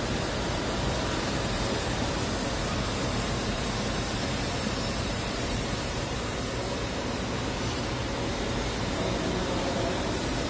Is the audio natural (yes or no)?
no